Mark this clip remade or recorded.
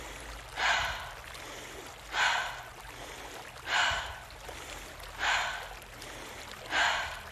recorded